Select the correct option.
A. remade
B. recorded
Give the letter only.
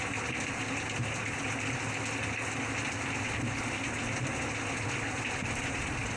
B